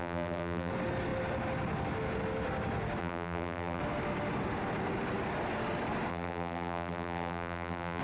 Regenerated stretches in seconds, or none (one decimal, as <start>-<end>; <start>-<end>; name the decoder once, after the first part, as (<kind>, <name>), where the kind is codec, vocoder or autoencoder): 0.0-0.7 (vocoder, BigVGAN v2); 3.0-3.8; 6.1-8.0